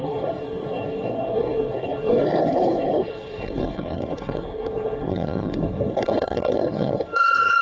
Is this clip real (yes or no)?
no